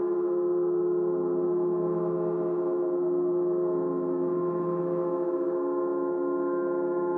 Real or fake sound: fake